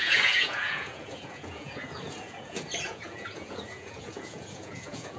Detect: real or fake fake